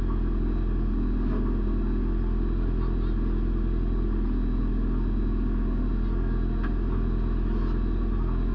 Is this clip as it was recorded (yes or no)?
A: yes